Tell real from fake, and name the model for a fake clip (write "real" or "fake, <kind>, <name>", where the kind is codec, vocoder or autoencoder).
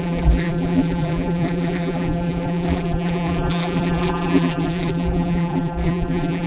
fake, vocoder, BigVGAN v2